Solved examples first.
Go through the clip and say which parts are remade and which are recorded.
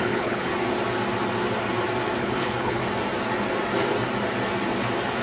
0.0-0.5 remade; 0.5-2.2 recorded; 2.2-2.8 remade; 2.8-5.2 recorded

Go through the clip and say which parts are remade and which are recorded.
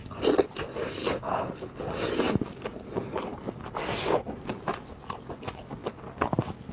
0.0-1.0 recorded; 1.0-1.8 remade; 1.8-6.7 recorded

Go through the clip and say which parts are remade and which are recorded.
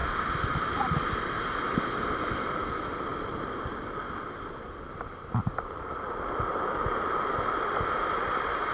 0.0-8.7 recorded